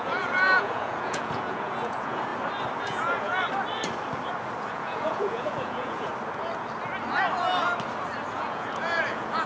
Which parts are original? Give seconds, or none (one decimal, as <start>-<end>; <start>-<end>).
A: 2.3-2.8; 3.3-4.6; 6.1-8.3